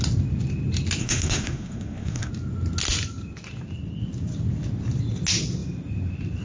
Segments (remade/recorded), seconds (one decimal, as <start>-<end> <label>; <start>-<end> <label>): 0.0-1.0 recorded; 1.0-2.3 remade; 2.3-6.4 recorded